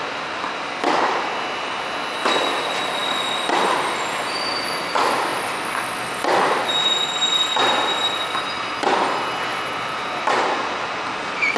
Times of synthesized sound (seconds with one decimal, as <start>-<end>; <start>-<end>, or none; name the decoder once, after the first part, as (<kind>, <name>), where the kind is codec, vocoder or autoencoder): 5.3-7.0 (vocoder, BigVGAN v2); 9.5-11.2